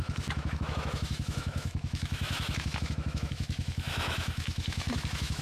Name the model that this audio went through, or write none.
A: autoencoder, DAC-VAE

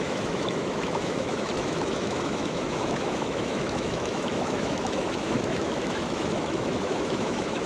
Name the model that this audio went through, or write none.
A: autoencoder, DAC-VAE